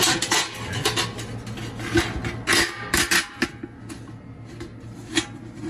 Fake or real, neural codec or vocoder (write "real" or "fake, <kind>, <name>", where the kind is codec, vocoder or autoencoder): real